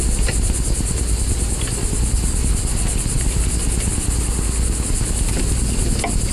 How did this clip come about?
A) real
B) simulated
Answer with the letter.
A